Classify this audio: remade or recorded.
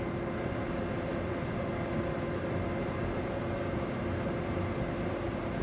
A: recorded